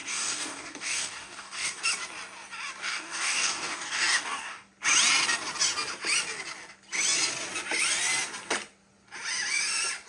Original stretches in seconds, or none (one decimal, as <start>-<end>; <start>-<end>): 1.8-2.8; 4.7-10.1